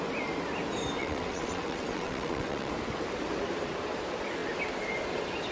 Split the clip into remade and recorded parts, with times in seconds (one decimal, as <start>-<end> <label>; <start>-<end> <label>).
0.0-1.0 recorded; 1.0-2.7 remade; 2.7-5.5 recorded